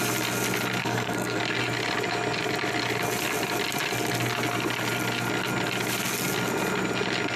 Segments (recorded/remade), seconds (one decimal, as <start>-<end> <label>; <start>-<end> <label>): 0.0-0.8 recorded; 0.8-1.4 remade; 1.4-7.4 recorded